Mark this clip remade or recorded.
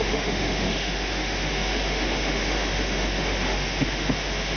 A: remade